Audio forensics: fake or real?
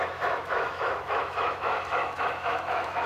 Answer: fake